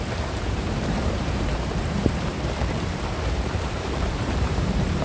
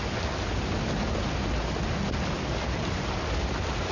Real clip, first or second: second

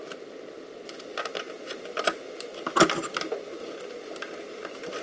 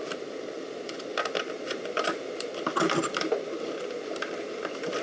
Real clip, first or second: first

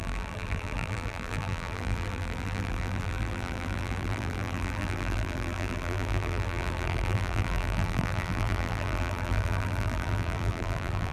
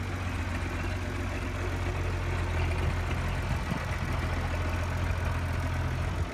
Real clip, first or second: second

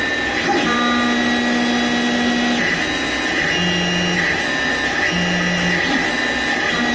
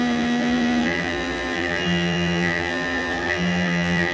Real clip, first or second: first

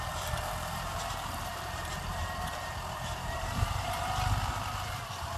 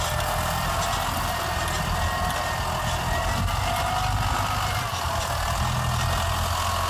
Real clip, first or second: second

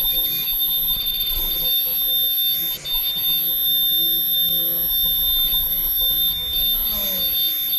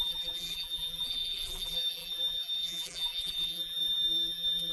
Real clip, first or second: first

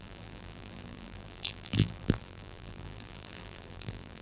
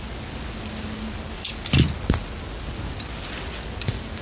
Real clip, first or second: second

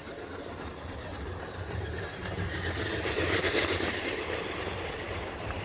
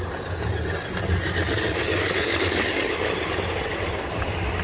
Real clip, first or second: second